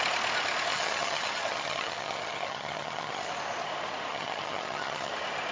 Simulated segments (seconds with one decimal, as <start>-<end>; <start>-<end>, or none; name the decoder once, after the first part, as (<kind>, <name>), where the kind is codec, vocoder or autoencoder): 0.7-3.3 (vocoder, HiFi-GAN); 4.1-5.1